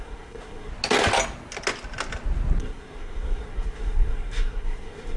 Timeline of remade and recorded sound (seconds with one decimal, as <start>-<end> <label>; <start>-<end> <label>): 0.0-0.7 remade; 0.7-2.6 recorded; 2.6-5.2 remade